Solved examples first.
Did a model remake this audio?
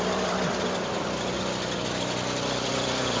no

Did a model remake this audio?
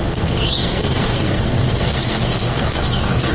yes